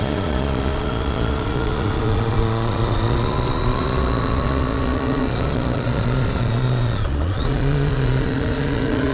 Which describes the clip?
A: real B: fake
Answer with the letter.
B